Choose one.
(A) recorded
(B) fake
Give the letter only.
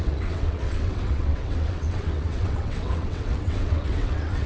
B